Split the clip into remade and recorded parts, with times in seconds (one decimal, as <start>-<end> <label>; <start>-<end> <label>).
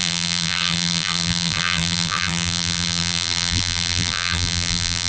0.0-5.1 remade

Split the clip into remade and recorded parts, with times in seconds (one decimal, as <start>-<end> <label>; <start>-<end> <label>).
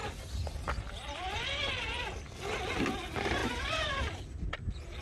0.0-3.4 recorded; 3.4-4.2 remade; 4.2-5.0 recorded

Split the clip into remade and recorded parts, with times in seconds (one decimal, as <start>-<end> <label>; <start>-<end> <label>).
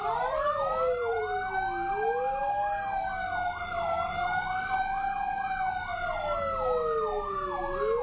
0.0-1.2 remade; 1.2-8.0 recorded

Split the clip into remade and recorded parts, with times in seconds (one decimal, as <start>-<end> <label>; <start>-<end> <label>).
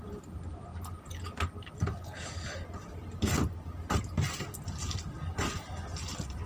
0.0-6.5 recorded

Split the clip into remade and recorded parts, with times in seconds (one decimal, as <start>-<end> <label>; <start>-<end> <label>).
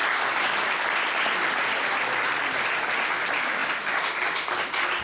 0.0-1.3 remade; 1.3-3.6 recorded; 3.6-4.3 remade; 4.3-5.0 recorded